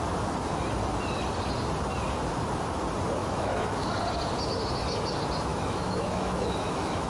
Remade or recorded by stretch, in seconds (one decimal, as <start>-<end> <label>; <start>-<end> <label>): 0.0-3.2 recorded; 3.2-3.9 remade; 3.9-5.5 recorded; 5.5-7.1 remade